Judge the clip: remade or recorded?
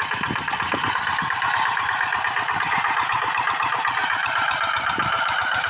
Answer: remade